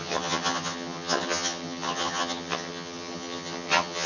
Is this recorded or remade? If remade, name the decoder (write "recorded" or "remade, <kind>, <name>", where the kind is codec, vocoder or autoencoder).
remade, vocoder, HiFi-GAN